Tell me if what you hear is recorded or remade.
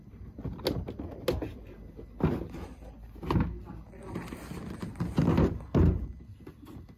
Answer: recorded